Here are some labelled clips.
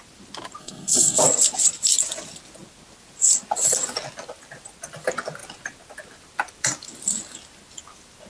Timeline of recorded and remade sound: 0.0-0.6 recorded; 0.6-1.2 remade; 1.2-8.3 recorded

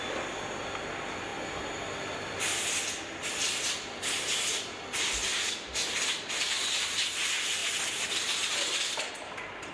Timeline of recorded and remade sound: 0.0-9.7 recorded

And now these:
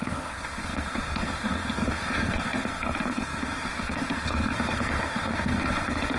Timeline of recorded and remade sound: 0.0-6.2 remade

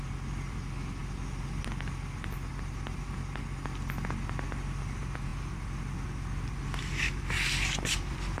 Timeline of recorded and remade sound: 0.0-8.4 recorded

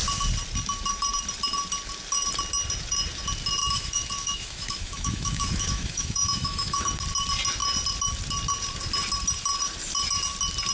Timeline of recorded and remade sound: 0.0-3.6 recorded; 3.6-6.9 remade; 6.9-10.7 recorded

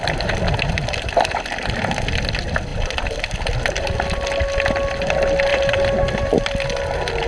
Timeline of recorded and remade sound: 0.0-5.5 recorded; 5.5-6.5 remade; 6.5-7.3 recorded

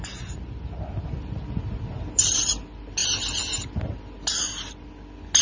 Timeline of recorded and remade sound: 0.0-5.4 recorded